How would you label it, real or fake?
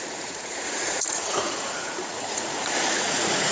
fake